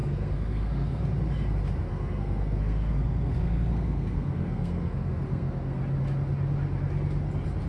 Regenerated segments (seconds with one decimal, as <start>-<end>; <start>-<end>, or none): 0.0-1.0; 1.9-5.8